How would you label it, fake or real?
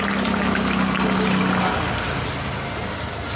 real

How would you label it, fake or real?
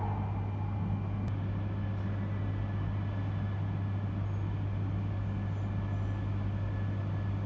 real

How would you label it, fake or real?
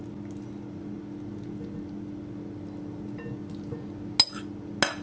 real